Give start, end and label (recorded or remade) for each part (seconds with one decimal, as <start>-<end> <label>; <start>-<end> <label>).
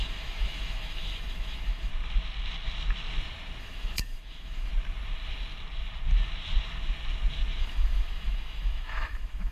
0.0-1.9 remade; 1.9-3.6 recorded; 3.6-4.7 remade; 4.7-7.6 recorded; 7.6-9.5 remade